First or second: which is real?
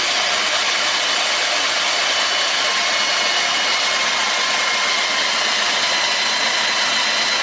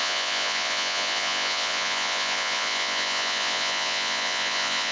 first